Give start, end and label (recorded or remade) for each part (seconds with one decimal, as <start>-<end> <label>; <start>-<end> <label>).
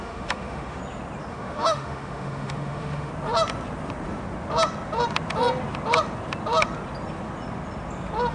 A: 0.0-0.8 remade; 0.8-1.3 recorded; 1.3-3.1 remade; 3.1-8.3 recorded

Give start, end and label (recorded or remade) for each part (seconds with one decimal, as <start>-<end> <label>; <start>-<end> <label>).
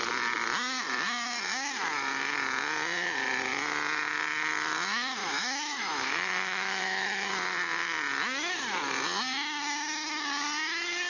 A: 0.0-5.2 recorded; 5.2-7.3 remade; 7.3-11.1 recorded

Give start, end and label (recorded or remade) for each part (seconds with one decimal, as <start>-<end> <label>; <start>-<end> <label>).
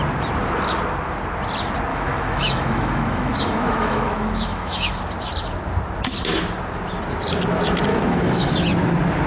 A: 0.0-1.9 recorded; 1.9-5.0 remade; 5.0-7.9 recorded; 7.9-8.5 remade; 8.5-9.3 recorded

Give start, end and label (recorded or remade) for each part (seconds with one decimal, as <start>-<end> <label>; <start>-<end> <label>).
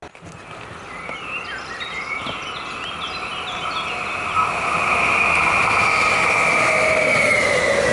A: 0.0-7.9 recorded